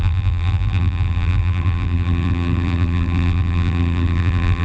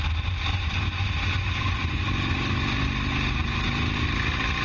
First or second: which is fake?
first